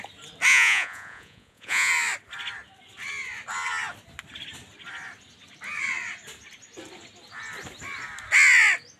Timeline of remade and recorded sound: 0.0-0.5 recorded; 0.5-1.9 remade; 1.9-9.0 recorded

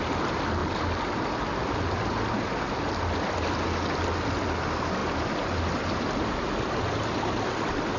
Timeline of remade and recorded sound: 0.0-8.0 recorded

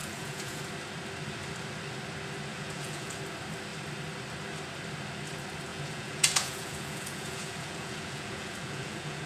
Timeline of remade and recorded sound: 0.0-0.6 remade; 0.6-2.5 recorded; 2.5-3.2 remade; 3.2-5.7 recorded; 5.7-9.3 remade